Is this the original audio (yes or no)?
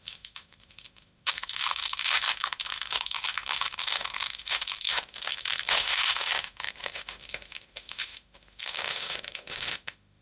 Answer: no